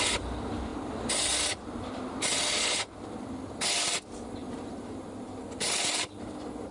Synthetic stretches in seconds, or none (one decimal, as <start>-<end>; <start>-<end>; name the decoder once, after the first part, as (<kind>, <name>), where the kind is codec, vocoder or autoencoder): none